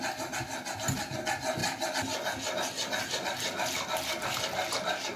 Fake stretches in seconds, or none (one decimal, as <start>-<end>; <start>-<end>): none